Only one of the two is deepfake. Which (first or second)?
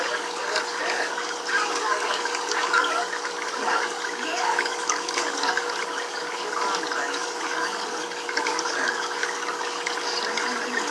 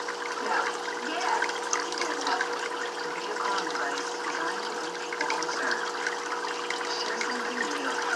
first